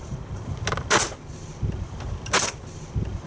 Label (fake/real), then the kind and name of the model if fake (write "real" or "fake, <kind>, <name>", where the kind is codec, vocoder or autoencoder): real